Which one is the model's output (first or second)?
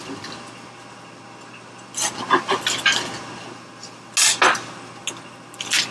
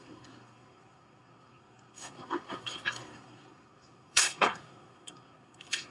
second